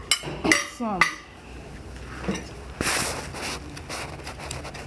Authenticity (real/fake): real